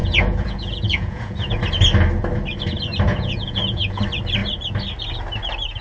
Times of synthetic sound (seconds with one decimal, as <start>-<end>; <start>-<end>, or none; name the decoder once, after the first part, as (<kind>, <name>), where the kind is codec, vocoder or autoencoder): 0.0-1.6 (vocoder, Vocos); 3.1-4.0